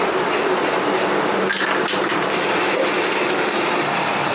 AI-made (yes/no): no